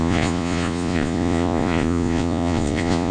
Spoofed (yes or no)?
yes